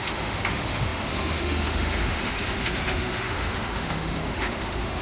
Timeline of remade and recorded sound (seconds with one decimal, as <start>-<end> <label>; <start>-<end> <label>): 0.0-5.0 remade